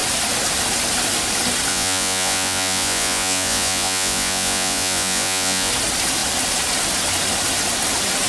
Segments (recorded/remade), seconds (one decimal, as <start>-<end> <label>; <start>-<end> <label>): 0.0-1.7 recorded; 1.7-5.7 remade; 5.7-8.3 recorded